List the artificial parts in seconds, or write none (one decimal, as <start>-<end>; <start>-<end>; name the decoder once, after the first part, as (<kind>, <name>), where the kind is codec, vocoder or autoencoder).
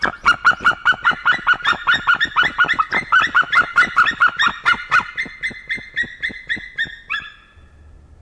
none